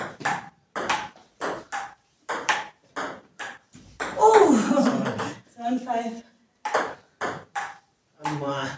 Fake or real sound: fake